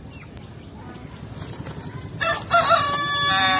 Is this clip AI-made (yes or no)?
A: no